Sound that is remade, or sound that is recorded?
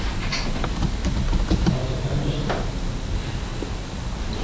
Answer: recorded